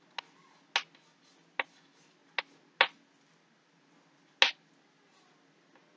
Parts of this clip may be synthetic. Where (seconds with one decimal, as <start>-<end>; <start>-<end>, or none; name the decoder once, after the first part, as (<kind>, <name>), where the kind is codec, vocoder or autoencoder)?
none